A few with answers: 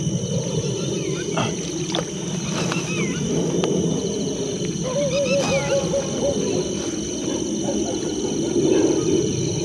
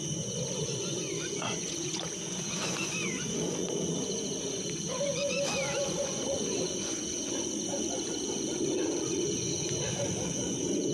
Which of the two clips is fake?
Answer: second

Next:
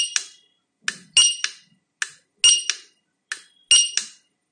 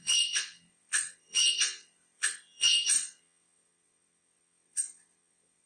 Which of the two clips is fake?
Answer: second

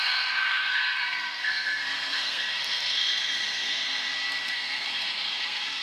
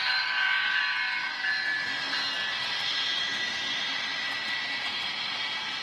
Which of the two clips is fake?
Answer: first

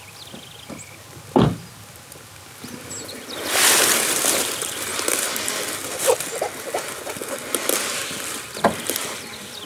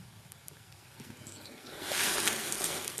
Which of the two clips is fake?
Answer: second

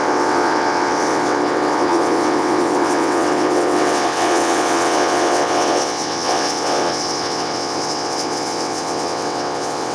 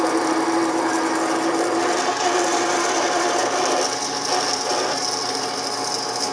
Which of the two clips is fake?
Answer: first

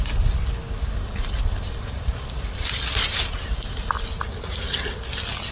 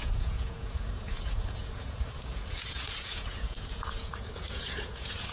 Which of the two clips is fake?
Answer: second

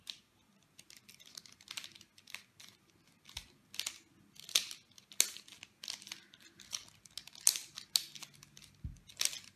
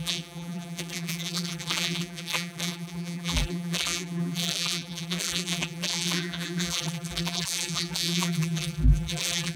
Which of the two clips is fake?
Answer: second